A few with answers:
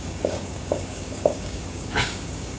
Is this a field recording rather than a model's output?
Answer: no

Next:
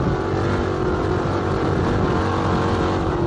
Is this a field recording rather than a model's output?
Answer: yes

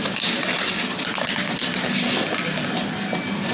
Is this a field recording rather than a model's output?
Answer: yes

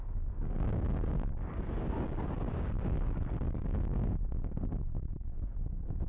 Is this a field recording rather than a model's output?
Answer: no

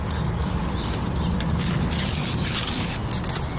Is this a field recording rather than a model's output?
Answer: yes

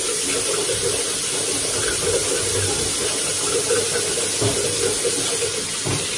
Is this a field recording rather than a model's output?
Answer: yes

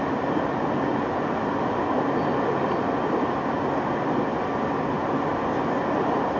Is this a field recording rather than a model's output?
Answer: yes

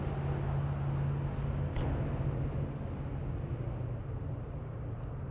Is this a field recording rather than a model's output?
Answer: yes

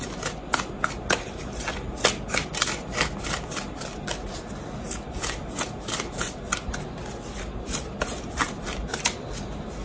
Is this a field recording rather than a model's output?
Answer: yes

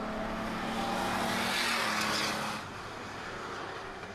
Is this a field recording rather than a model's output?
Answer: yes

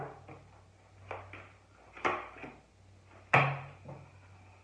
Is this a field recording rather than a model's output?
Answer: yes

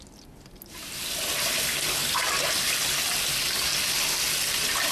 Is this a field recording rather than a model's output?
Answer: yes